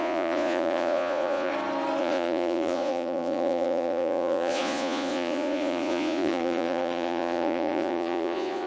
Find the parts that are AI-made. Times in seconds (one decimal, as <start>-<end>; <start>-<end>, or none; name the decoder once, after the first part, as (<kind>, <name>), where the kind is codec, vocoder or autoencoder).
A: 0.0-1.5 (vocoder, Vocos); 2.0-8.7